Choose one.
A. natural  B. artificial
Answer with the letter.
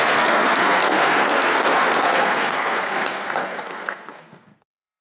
B